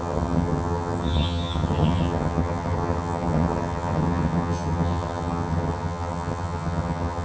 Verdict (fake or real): fake